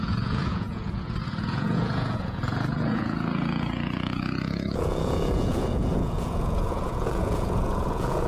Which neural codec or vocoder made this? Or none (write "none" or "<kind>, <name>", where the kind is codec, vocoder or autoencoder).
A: vocoder, Vocos